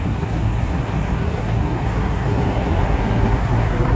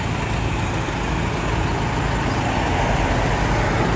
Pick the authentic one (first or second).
second